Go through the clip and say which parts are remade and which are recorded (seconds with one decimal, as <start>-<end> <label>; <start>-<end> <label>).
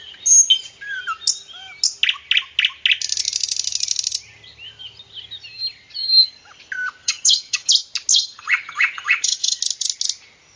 0.0-7.0 recorded; 7.0-7.7 remade; 7.7-8.1 recorded; 8.1-9.6 remade; 9.6-10.6 recorded